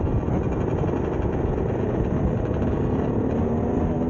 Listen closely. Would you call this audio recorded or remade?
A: recorded